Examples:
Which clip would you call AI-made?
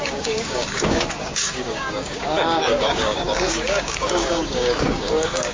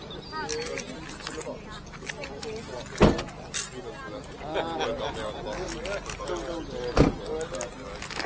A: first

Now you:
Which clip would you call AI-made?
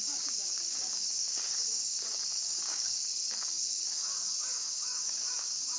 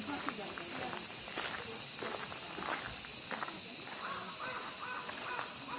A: first